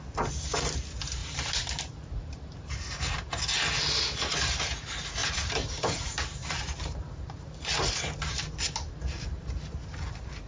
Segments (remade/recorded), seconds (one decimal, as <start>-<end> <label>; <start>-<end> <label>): 0.0-1.2 recorded; 1.2-3.4 remade; 3.4-5.2 recorded; 5.2-8.3 remade; 8.3-10.5 recorded